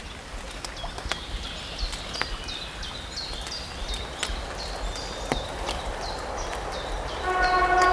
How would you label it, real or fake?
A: real